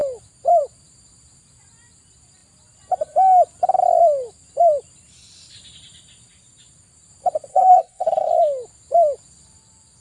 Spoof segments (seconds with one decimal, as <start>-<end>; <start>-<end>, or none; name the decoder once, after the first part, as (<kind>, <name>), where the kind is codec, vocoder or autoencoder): 7.5-8.3 (codec, SNAC)